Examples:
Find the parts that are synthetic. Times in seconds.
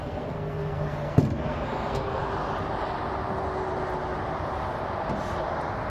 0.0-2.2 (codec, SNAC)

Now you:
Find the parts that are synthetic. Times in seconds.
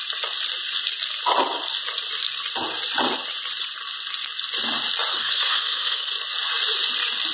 5.1-6.1 (codec, SNAC)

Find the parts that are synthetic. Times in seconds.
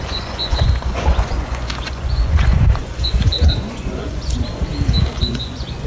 0.0-4.7 (vocoder, Vocos); 5.2-5.9